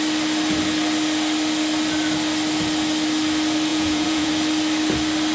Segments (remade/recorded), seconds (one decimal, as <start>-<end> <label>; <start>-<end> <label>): 0.0-3.7 recorded; 3.7-4.3 remade; 4.3-5.3 recorded